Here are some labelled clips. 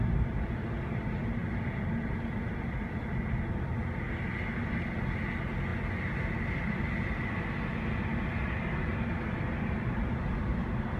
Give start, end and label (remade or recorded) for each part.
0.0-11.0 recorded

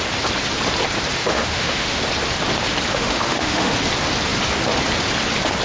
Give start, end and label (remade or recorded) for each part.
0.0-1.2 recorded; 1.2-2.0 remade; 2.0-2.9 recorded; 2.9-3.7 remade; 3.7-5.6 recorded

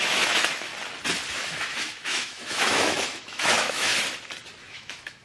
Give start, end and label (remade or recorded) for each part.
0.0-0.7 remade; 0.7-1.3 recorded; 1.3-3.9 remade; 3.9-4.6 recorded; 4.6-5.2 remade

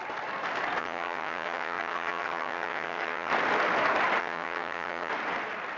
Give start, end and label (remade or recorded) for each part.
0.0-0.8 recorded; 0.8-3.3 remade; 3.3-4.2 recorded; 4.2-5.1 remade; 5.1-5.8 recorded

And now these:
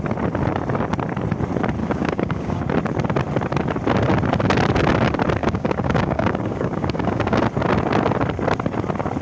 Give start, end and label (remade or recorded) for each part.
0.0-1.8 recorded; 1.8-2.6 remade; 2.6-5.4 recorded; 5.4-7.4 remade; 7.4-9.2 recorded

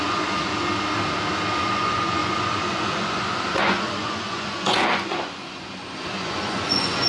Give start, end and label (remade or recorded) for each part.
0.0-0.5 remade; 0.5-1.6 recorded; 1.6-7.1 remade

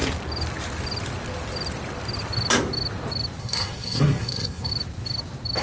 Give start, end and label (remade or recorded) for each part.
0.0-3.4 recorded; 3.4-4.7 remade; 4.7-5.6 recorded